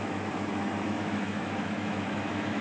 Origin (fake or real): fake